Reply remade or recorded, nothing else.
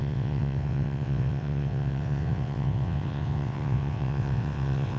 remade